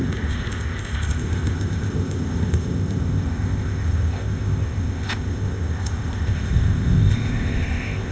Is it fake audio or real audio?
fake